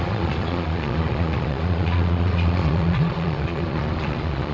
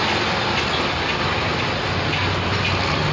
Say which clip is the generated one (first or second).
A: first